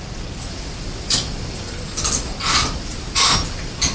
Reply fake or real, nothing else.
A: real